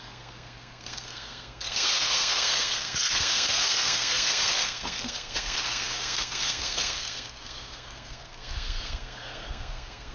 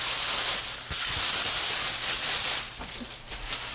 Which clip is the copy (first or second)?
first